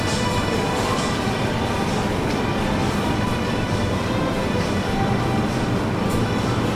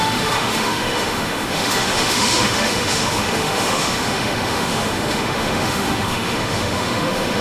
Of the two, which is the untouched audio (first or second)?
first